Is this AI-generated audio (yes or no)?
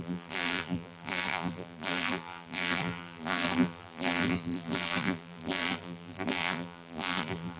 yes